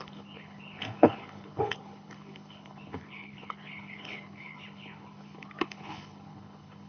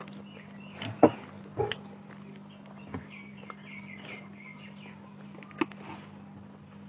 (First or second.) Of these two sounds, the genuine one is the second